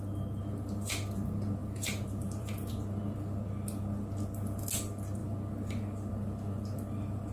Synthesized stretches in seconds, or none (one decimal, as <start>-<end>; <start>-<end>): 1.6-2.7